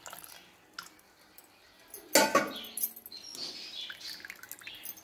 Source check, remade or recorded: recorded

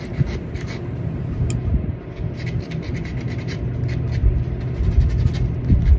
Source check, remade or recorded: recorded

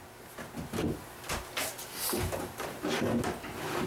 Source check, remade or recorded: recorded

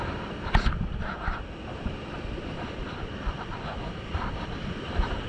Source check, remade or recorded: remade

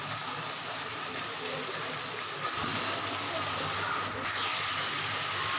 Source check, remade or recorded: recorded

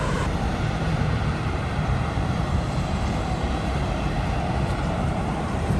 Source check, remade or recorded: remade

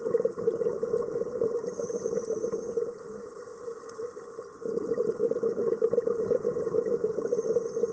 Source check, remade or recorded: recorded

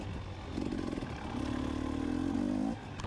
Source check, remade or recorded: recorded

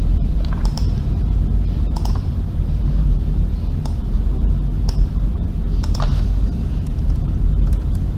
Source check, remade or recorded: remade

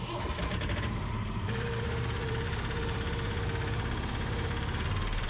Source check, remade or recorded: remade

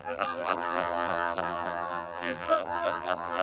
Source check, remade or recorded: remade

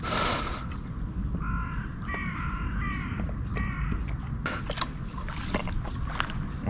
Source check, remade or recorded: recorded